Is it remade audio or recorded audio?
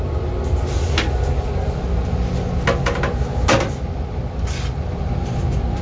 recorded